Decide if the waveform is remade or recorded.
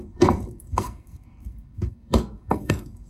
remade